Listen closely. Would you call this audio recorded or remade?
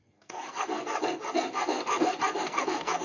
remade